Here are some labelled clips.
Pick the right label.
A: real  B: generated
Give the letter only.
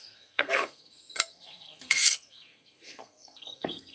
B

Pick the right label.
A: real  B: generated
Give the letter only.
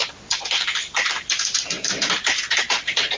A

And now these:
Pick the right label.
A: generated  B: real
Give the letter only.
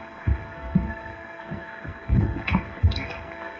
A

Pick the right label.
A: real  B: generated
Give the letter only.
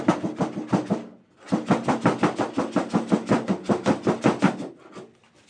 A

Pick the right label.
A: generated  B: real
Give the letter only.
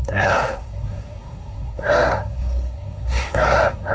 A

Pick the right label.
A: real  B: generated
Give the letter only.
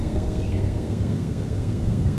B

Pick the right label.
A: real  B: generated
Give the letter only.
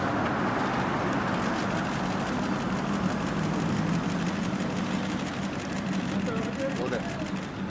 A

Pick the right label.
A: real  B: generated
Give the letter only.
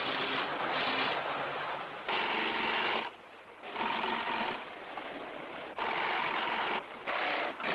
A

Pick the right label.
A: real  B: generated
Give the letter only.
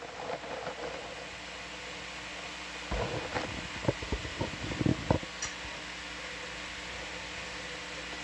A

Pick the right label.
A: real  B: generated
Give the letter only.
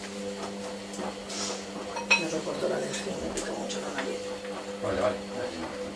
A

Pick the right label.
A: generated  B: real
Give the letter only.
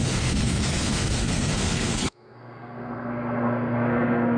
A